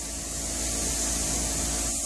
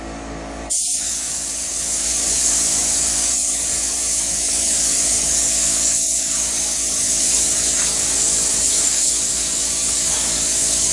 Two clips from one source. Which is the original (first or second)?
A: first